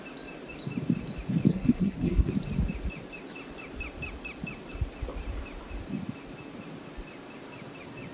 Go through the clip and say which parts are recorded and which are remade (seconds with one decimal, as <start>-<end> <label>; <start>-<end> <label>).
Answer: 0.0-1.5 recorded; 1.5-2.3 remade; 2.3-8.1 recorded